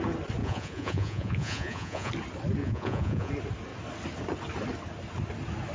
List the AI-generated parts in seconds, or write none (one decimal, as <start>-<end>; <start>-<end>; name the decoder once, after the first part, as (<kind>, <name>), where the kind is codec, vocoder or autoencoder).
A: 0.4-2.1 (vocoder, Vocos); 2.6-3.3